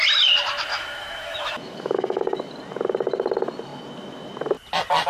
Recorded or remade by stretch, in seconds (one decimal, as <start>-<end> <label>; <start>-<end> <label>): 0.0-0.7 recorded; 0.7-2.2 remade; 2.2-5.1 recorded